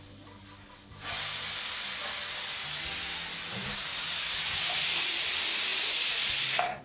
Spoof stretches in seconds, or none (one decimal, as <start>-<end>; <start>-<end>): 3.9-4.4; 5.7-6.8